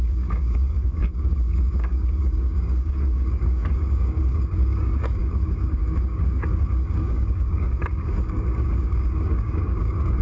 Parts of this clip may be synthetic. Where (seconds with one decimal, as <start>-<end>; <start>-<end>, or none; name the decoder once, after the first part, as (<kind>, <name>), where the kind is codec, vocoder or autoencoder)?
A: 0.0-10.2 (codec, DAC)